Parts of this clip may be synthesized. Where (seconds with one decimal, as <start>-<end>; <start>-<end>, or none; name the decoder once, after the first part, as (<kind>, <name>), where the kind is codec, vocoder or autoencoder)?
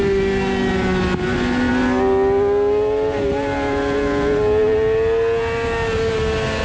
none